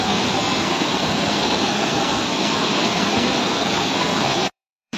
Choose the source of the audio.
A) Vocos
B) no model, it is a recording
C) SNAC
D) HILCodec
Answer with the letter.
C